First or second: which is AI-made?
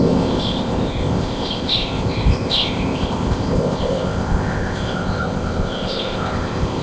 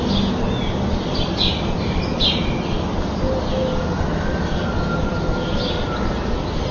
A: first